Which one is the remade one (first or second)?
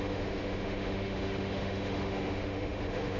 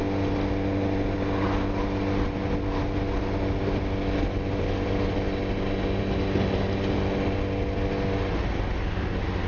first